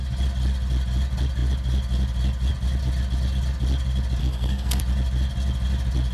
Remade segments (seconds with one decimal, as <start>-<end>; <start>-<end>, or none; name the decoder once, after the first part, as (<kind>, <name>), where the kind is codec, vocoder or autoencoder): 4.2-4.8 (codec, SNAC)